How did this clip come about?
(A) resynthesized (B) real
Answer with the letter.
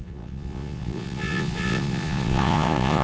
A